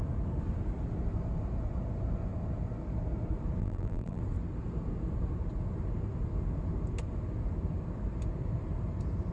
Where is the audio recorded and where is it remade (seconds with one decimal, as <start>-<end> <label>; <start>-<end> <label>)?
0.0-3.6 recorded; 3.6-4.2 remade; 4.2-9.3 recorded